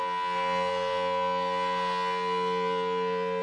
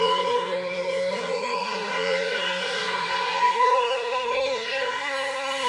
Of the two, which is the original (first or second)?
first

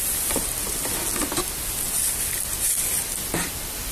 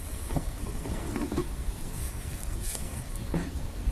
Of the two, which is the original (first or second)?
first